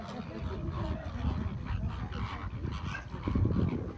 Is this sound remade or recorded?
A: recorded